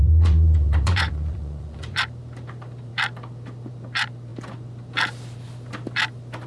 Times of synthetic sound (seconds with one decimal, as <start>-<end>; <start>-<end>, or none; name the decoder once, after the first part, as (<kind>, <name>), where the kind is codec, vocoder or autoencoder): 0.0-2.0 (vocoder, Vocos)